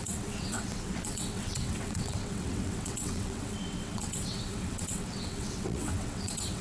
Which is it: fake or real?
fake